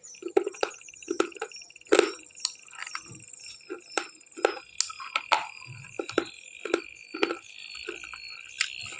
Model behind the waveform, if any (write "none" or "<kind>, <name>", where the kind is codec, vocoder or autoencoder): none